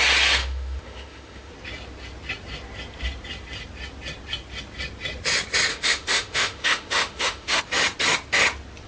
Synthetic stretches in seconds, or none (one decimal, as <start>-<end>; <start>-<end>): 0.4-1.5; 5.7-7.6